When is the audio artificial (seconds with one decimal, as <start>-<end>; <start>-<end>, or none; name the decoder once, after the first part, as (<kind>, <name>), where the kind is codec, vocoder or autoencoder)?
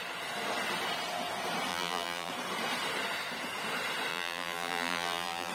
1.7-2.3 (vocoder, BigVGAN v2); 4.1-5.5